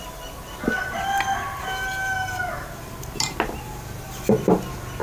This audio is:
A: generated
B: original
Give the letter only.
B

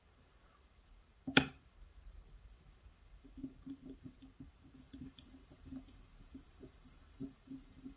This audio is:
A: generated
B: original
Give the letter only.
A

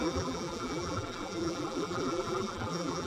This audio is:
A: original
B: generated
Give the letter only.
B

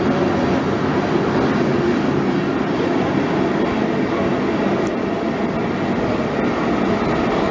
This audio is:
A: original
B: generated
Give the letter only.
A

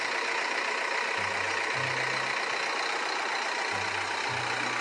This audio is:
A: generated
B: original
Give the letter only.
B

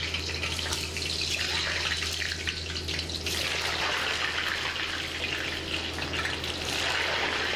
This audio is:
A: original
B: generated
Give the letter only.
A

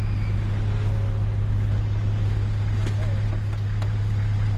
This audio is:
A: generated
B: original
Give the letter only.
B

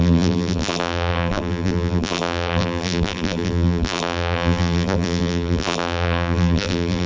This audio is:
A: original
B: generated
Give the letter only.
B